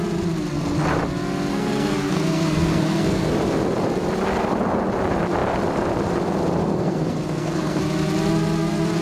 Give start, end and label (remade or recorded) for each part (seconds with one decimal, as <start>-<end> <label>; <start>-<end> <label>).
0.0-1.5 recorded; 1.5-3.3 remade; 3.3-6.6 recorded; 6.6-7.8 remade; 7.8-9.0 recorded